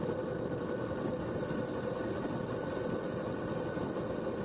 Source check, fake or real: real